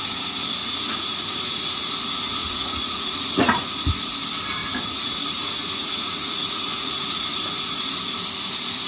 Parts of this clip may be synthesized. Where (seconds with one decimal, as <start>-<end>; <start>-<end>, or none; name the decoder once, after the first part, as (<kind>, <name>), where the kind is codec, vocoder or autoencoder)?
0.6-1.9 (vocoder, Vocos); 2.4-3.8; 4.6-8.0